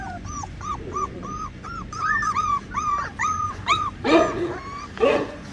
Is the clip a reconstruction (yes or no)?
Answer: yes